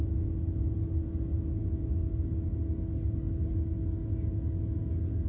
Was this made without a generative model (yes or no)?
yes